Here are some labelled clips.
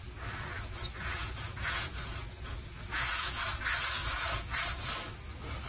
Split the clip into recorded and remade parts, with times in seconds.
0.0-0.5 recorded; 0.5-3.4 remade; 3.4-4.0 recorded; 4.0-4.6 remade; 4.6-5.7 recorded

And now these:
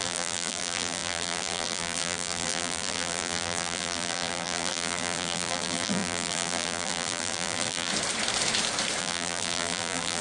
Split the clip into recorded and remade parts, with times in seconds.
0.0-7.9 remade; 7.9-9.0 recorded; 9.0-10.2 remade

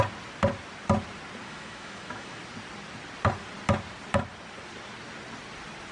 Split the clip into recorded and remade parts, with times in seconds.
0.0-1.4 recorded; 1.4-2.4 remade; 2.4-5.9 recorded

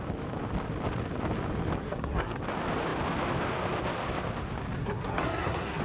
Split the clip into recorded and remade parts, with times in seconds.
0.0-1.8 recorded; 1.8-2.4 remade; 2.4-4.8 recorded; 4.8-5.8 remade

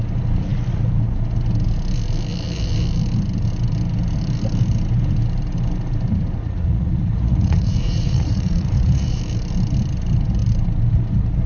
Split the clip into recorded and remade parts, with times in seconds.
0.0-6.4 recorded; 6.4-9.2 remade; 9.2-11.5 recorded

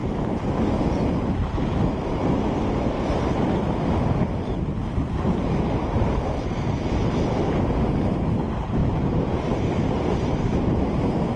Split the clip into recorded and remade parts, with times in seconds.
0.0-8.8 recorded; 8.8-11.0 remade; 11.0-11.4 recorded

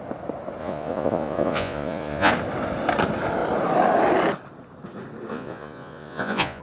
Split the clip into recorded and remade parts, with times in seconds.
0.0-0.6 recorded; 0.6-2.3 remade; 2.3-5.3 recorded; 5.3-6.6 remade

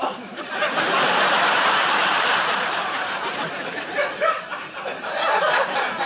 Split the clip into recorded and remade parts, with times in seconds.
0.0-6.1 remade